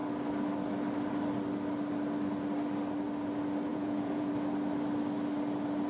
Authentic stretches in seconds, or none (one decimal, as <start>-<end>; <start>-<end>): 0.0-3.7; 4.3-5.9